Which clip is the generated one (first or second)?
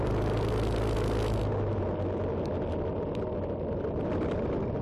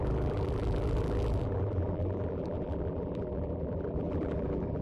second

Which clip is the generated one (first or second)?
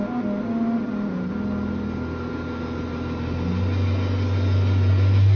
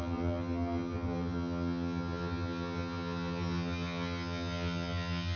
second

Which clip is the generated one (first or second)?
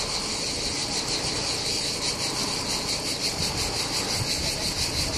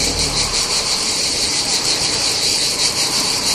second